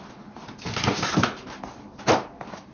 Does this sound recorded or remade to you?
recorded